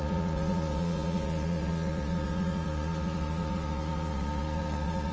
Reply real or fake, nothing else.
fake